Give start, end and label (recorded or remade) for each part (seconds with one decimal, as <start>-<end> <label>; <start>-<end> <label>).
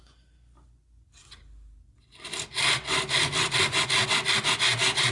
0.0-5.1 recorded